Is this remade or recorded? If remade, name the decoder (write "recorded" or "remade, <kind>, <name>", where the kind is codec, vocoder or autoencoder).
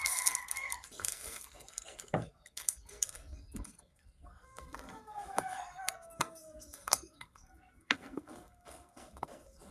remade, codec, SNAC